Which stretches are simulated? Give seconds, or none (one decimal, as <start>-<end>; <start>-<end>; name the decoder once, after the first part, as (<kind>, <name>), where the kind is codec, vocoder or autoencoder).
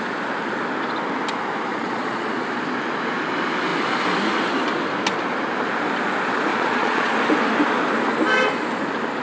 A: 1.7-2.3 (vocoder, Vocos); 6.5-7.1